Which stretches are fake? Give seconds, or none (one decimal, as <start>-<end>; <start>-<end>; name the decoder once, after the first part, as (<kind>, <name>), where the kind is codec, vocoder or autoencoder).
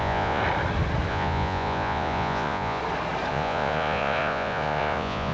0.0-0.4 (vocoder, Vocos); 1.1-2.8; 3.3-5.3